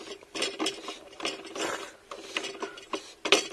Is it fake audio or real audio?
real